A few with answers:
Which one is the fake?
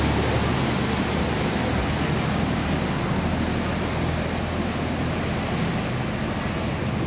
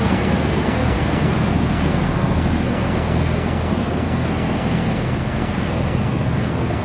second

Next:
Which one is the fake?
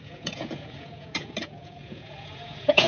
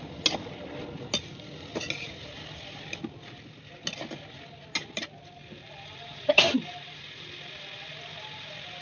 first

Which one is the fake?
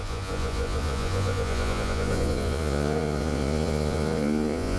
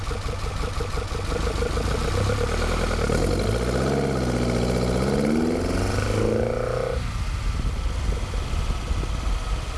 first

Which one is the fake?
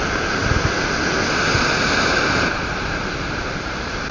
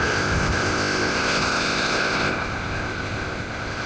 second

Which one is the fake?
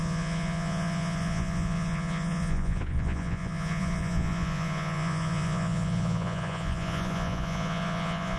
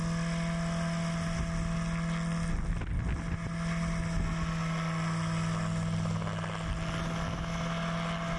first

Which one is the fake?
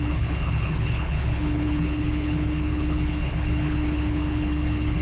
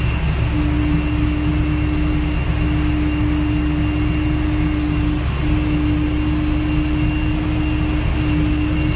first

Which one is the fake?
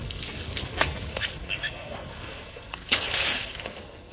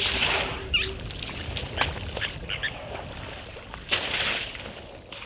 first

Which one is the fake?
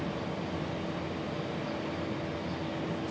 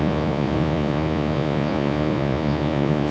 second